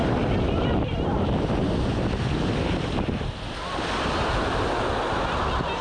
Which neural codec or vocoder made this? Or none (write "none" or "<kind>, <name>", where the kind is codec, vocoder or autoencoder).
none